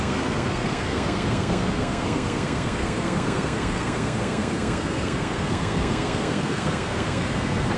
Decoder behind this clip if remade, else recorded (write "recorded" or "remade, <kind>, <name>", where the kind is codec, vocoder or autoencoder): remade, codec, SNAC